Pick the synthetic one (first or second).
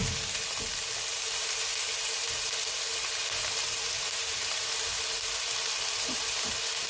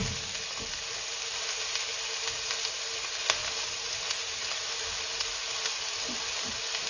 first